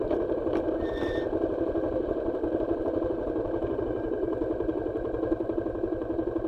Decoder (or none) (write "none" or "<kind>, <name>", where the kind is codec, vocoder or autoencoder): vocoder, BigVGAN v2